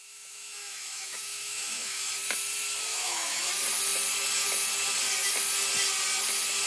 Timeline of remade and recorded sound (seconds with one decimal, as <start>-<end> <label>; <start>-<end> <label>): 0.0-2.1 remade; 2.1-2.9 recorded; 2.9-3.5 remade; 3.5-6.7 recorded